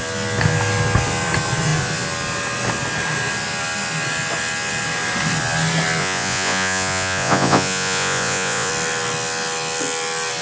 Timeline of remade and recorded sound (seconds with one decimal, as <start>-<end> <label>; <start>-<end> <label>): 0.0-6.0 recorded; 6.0-8.7 remade; 8.7-10.4 recorded